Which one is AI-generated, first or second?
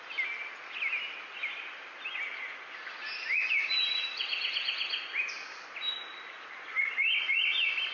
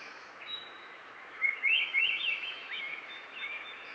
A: second